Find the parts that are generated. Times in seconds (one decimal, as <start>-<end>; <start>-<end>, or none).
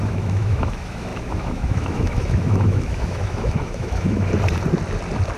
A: 0.0-4.3